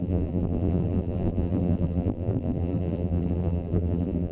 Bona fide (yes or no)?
no